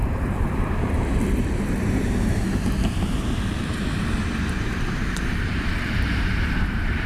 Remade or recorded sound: remade